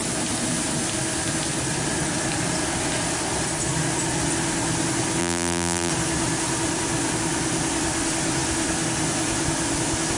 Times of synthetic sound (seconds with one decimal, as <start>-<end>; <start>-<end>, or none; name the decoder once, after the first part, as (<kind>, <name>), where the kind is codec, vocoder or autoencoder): 5.2-5.9 (vocoder, BigVGAN v2)